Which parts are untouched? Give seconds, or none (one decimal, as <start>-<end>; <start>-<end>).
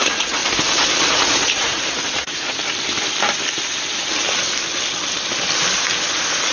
0.4-1.1; 2.6-6.5